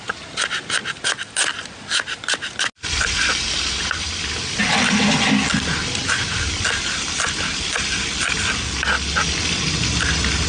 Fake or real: real